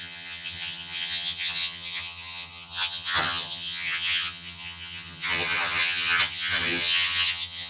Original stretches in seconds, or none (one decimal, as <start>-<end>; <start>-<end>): none